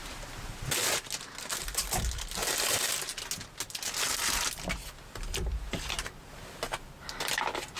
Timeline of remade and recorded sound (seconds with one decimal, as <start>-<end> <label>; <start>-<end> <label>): 0.0-7.8 recorded